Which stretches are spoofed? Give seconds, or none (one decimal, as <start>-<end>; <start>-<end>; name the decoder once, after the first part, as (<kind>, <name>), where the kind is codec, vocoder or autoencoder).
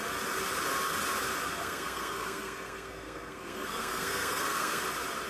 1.6-4.8 (codec, SNAC)